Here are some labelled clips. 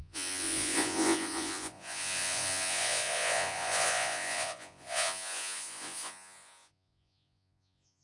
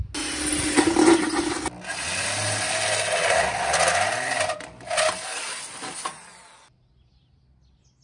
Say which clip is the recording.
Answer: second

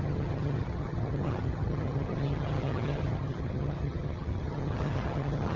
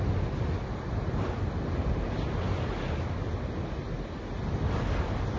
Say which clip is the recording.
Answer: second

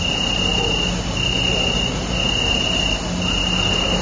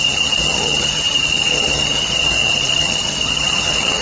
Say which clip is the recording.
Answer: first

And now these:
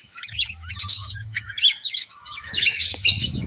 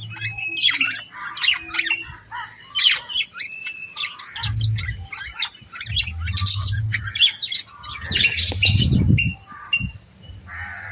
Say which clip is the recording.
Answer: second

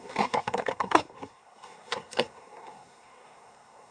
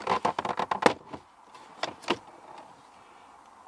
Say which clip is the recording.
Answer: second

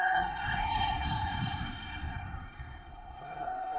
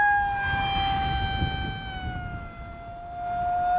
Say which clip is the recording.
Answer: second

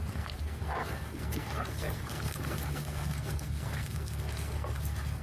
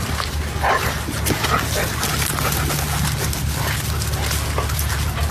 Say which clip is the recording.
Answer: second